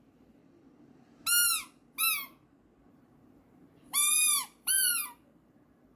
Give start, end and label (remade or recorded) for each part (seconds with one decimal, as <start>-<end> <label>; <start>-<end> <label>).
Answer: 0.0-0.4 remade; 0.4-2.9 recorded; 2.9-6.0 remade